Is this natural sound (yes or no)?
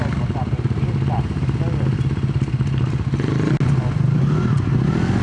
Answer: yes